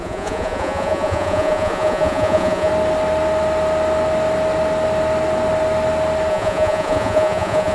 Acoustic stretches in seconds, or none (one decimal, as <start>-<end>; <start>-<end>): 2.7-6.3